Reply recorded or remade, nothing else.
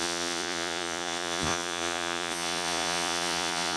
remade